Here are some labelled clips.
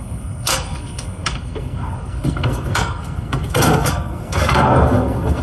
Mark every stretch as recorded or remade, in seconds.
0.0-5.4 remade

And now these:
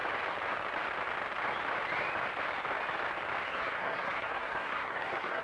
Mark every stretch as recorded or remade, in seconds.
0.0-3.5 recorded; 3.5-5.4 remade

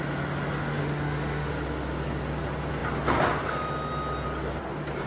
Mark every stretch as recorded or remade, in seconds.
0.0-0.8 recorded; 0.8-1.5 remade; 1.5-5.1 recorded

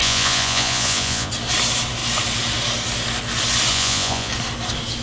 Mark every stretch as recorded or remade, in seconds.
0.0-1.3 remade; 1.3-3.7 recorded; 3.7-4.3 remade; 4.3-5.0 recorded

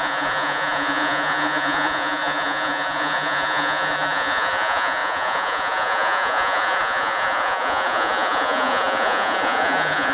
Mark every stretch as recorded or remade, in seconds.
0.0-10.1 remade

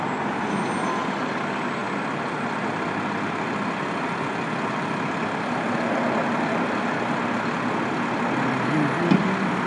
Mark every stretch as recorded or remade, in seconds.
0.0-9.7 recorded